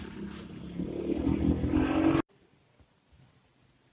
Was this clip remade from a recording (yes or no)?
no